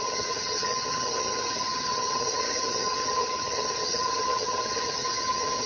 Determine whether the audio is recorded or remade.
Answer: remade